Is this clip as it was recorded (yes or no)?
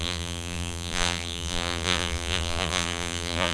no